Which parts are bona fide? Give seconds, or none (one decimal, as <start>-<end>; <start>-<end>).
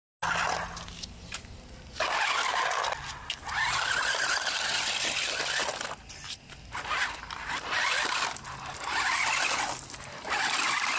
0.0-11.0